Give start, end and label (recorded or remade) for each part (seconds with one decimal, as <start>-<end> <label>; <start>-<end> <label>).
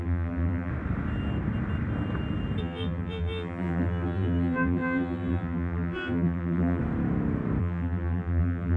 0.0-0.7 remade; 0.7-2.6 recorded; 2.6-6.8 remade; 6.8-7.6 recorded; 7.6-8.8 remade